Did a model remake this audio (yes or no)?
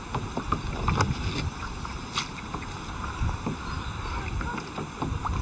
no